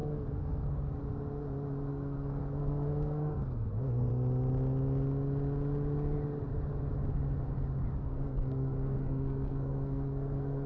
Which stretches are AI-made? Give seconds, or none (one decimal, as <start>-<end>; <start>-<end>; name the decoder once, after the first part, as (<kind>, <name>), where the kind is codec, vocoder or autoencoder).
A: 0.0-1.0 (codec, SNAC); 1.9-4.1; 7.8-10.7